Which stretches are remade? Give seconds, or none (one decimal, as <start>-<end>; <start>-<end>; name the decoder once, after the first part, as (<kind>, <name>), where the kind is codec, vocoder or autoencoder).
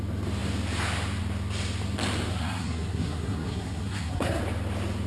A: 2.3-4.4 (codec, SNAC)